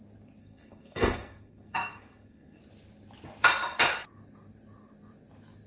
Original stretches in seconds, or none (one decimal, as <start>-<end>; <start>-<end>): 0.0-0.4; 2.6-5.7